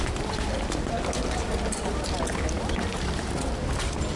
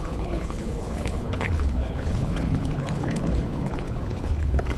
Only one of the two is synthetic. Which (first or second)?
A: second